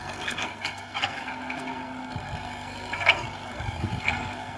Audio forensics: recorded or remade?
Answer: remade